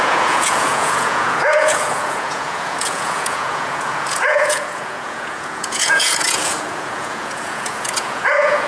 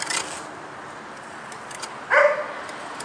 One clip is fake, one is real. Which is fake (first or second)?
first